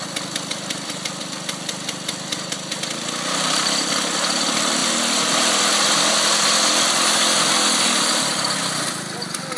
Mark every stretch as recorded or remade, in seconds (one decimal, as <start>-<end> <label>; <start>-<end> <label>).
0.0-9.6 recorded